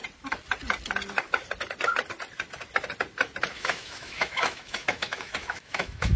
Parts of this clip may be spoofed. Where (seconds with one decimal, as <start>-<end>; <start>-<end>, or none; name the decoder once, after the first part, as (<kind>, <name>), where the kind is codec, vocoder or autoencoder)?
3.5-6.2 (autoencoder, DAC-VAE)